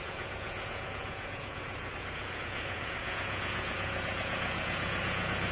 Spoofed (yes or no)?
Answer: yes